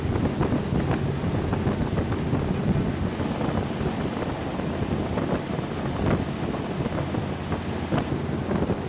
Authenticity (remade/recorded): recorded